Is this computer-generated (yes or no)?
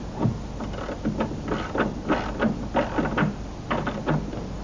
no